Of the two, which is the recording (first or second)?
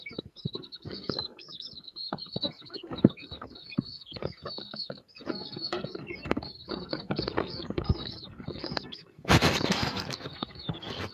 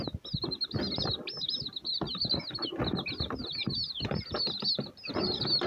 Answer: second